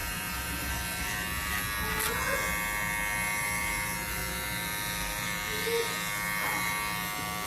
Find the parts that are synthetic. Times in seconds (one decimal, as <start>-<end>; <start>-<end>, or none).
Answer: 0.0-0.7